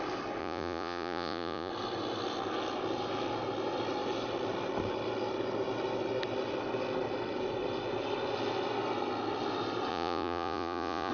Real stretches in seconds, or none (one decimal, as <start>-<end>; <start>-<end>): 0.0-0.4; 1.7-9.9